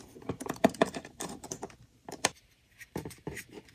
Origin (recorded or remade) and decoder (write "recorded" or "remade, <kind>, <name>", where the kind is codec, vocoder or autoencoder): remade, vocoder, BigVGAN v2